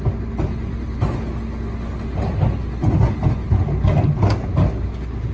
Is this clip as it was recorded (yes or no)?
yes